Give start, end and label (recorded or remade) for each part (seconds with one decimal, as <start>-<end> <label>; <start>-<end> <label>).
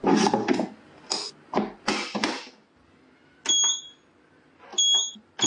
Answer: 0.0-5.5 recorded